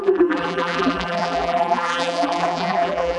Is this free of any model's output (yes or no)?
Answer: no